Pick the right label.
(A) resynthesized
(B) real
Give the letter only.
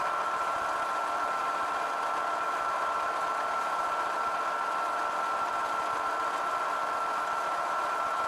B